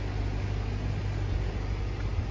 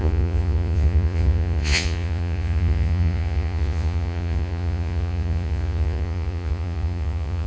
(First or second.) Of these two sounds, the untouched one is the first